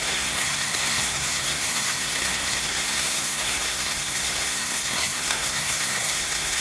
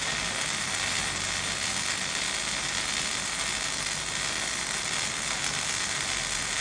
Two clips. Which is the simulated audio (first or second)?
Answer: first